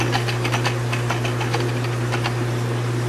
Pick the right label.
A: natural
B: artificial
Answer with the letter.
A